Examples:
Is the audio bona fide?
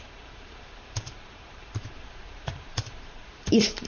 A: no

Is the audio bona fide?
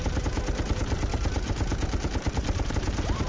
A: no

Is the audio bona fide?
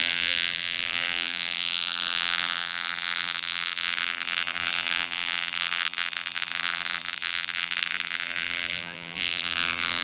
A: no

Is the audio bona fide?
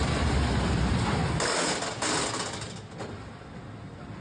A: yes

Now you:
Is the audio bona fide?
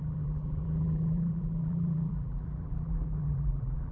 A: no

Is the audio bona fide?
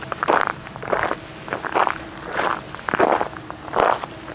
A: yes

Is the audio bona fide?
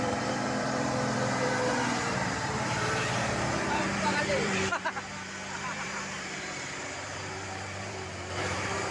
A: no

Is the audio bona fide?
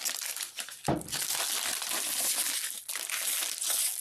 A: yes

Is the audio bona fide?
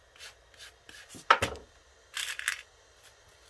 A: yes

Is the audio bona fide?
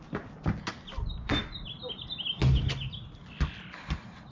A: yes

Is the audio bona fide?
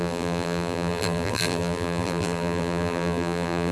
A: no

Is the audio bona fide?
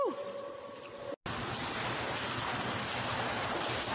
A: yes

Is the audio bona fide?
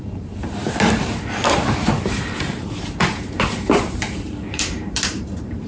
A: no